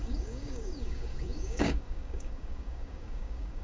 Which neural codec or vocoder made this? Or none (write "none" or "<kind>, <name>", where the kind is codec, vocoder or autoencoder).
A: codec, DAC